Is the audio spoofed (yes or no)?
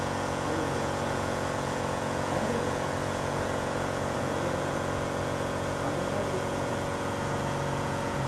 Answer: yes